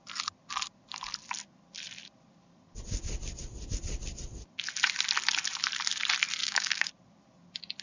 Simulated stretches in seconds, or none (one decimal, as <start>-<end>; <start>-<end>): 6.4-6.9